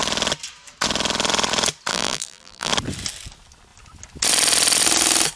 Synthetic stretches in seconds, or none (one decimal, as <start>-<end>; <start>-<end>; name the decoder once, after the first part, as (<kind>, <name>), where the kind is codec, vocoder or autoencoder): 1.9-2.7 (vocoder, BigVGAN v2)

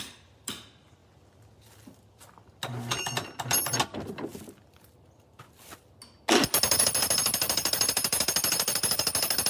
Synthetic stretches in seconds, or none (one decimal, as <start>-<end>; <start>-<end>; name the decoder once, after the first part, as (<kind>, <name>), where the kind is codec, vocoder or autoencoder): none

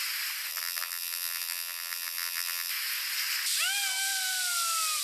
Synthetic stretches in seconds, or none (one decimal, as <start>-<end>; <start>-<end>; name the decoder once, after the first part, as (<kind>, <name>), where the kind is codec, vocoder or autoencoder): 0.5-2.7 (vocoder, BigVGAN v2)